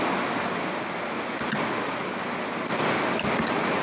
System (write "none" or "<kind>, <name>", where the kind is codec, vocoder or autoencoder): none